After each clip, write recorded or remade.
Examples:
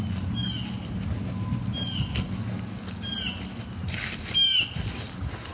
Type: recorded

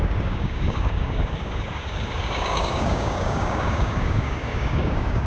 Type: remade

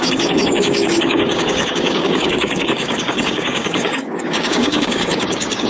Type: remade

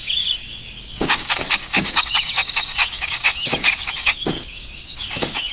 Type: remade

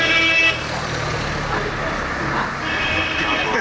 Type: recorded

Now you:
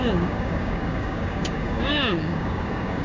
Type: remade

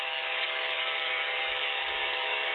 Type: remade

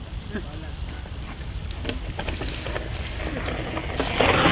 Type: recorded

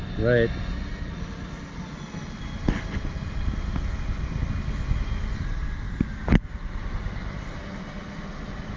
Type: recorded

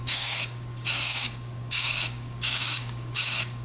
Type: remade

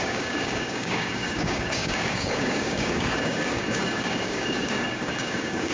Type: remade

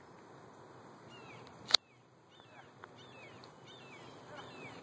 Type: recorded